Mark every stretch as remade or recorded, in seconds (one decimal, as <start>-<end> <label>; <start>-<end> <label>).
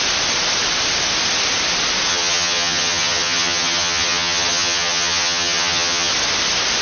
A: 0.0-2.1 recorded; 2.1-6.1 remade; 6.1-6.8 recorded